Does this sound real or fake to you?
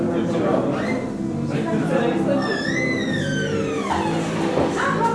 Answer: real